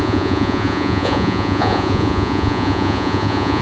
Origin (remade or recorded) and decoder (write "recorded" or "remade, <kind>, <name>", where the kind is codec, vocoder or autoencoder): remade, vocoder, Vocos